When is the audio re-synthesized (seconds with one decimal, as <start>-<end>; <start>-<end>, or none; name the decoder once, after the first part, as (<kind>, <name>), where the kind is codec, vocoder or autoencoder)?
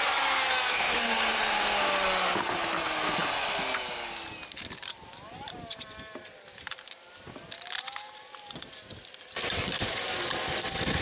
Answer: 0.7-1.8 (codec, SNAC)